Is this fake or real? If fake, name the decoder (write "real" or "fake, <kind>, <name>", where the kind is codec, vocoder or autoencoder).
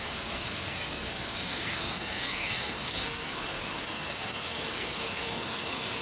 fake, codec, SNAC